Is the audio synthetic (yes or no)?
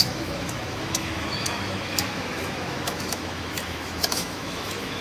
yes